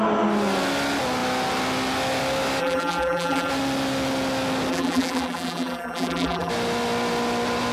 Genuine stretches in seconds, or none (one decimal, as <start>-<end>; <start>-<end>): 0.0-2.6; 3.5-4.7; 6.5-7.7